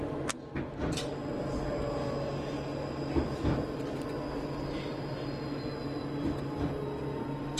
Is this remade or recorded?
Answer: recorded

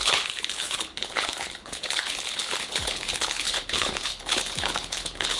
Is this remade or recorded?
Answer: remade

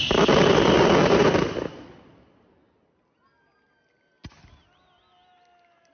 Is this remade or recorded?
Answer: recorded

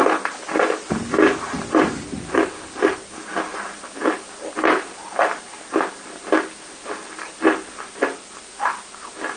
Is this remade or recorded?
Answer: recorded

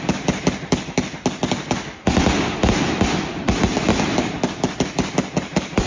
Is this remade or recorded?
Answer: recorded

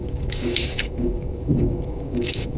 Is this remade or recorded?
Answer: remade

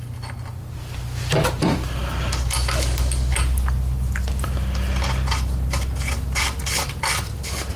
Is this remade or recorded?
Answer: recorded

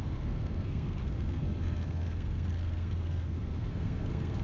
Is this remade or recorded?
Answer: remade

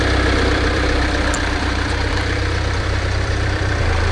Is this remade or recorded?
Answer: remade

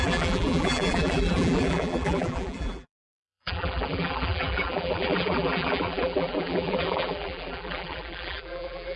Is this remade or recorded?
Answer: remade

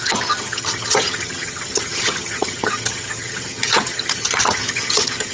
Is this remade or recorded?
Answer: remade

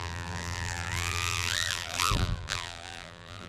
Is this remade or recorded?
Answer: remade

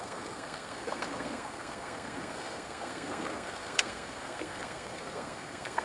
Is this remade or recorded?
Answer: remade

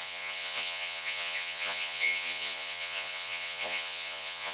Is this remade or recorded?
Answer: remade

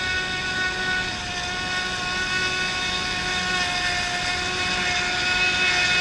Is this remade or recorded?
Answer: recorded